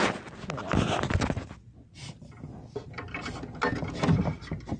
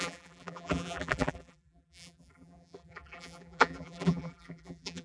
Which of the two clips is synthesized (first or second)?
second